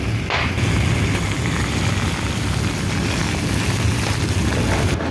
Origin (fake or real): real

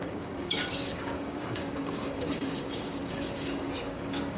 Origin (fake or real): fake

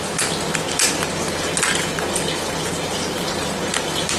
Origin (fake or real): real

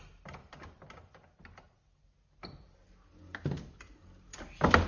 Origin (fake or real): real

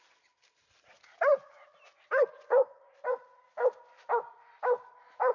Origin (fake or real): real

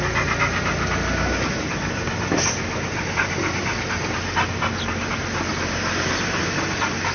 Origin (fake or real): real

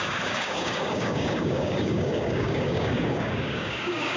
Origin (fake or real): fake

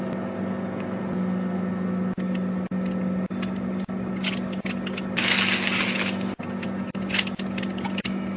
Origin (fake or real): real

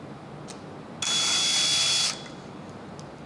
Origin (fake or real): real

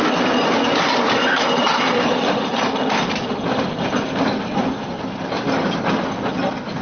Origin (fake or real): real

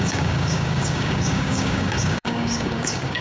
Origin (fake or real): fake